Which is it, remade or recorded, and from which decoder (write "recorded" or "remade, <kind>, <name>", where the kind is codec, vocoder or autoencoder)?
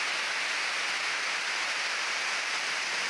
recorded